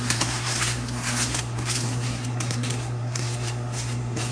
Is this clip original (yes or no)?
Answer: no